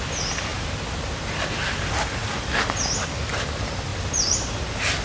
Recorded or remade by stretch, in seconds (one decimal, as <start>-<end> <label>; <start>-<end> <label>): 0.0-2.2 recorded; 2.2-2.8 remade; 2.8-3.9 recorded; 3.9-4.6 remade; 4.6-5.0 recorded